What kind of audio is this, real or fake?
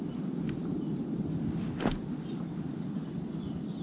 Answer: real